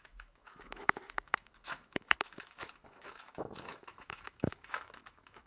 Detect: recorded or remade remade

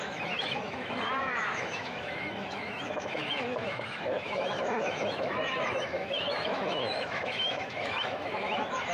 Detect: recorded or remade remade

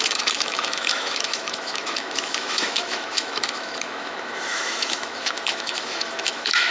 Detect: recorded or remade remade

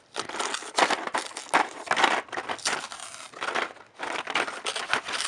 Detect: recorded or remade recorded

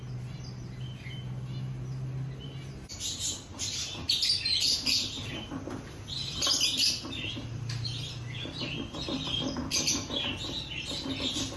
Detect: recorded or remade recorded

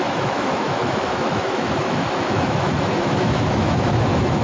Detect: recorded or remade remade